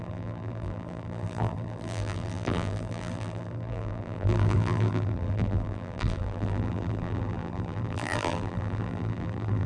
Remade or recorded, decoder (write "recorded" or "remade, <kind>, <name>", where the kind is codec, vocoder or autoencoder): remade, vocoder, BigVGAN v2